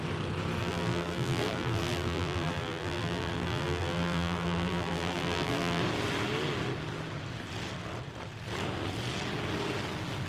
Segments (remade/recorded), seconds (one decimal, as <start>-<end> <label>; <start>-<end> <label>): 0.0-0.6 recorded; 0.6-5.8 remade; 5.8-10.3 recorded